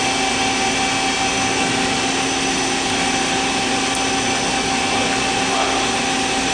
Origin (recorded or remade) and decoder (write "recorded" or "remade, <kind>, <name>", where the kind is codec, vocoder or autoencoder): recorded